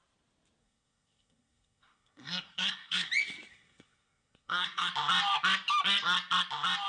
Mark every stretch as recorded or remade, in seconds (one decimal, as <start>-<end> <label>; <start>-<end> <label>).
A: 0.0-0.6 recorded; 0.6-3.1 remade; 3.1-3.5 recorded; 3.5-4.9 remade; 4.9-6.9 recorded